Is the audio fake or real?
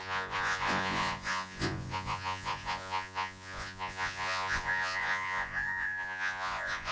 fake